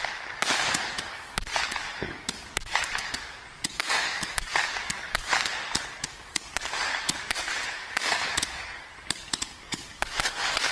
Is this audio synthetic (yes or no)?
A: yes